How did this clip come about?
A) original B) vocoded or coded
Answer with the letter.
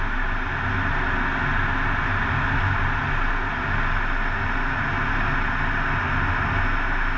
A